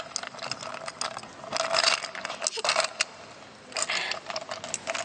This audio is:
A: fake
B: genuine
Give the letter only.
B